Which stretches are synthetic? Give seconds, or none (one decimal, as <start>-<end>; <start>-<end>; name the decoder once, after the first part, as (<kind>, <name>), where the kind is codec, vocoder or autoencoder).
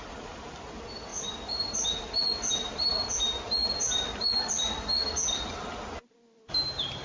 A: none